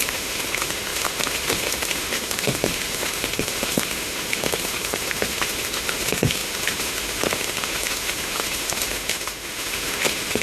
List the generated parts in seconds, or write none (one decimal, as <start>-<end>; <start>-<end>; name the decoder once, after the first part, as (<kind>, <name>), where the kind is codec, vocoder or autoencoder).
0.0-10.4 (autoencoder, DAC-VAE)